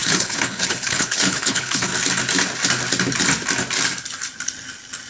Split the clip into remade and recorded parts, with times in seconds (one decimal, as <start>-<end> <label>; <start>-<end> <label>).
0.0-1.9 remade; 1.9-5.1 recorded